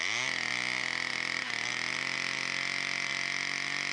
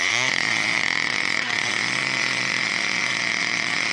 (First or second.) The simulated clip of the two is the second